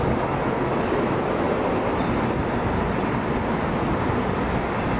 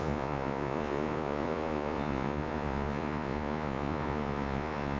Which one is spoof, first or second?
second